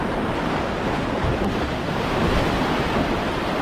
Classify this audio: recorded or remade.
remade